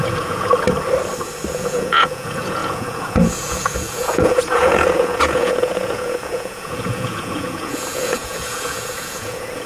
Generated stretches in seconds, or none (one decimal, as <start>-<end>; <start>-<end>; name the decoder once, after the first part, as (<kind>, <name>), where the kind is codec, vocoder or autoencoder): 0.0-0.5 (vocoder, Vocos); 1.5-9.7